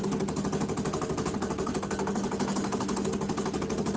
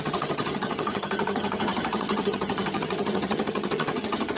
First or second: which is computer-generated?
second